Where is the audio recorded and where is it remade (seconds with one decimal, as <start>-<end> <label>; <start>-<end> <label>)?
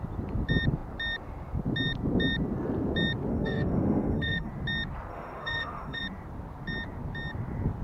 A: 0.0-3.3 recorded; 3.3-4.5 remade; 4.5-5.1 recorded; 5.1-6.0 remade; 6.0-7.8 recorded